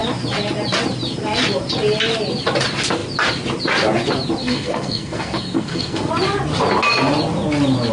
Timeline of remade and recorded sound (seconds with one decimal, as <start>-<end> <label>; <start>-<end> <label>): 0.0-4.4 recorded; 4.4-6.1 remade; 6.1-7.9 recorded

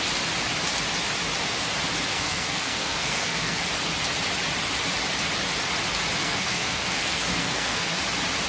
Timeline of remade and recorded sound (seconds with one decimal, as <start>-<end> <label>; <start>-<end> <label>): 0.0-2.1 recorded; 2.1-3.6 remade; 3.6-6.2 recorded; 6.2-8.0 remade; 8.0-8.5 recorded

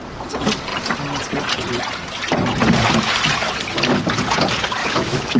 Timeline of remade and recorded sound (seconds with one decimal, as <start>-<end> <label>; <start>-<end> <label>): 0.0-4.8 recorded; 4.8-5.4 remade